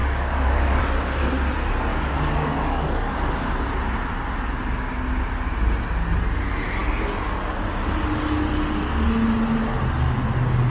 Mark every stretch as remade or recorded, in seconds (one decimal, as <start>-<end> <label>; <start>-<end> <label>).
0.0-0.8 remade; 0.8-1.9 recorded; 1.9-3.3 remade; 3.3-10.7 recorded